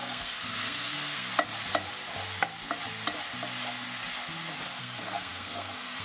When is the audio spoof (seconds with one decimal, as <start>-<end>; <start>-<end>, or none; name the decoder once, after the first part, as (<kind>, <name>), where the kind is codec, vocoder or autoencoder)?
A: 0.0-1.3 (codec, SNAC); 4.8-6.0